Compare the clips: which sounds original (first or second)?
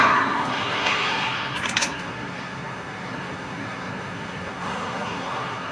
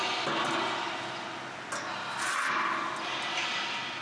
second